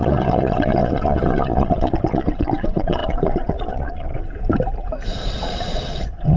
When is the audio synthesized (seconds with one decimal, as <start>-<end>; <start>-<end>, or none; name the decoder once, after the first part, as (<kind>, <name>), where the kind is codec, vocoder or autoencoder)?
0.0-4.2 (vocoder, Vocos); 5.3-6.4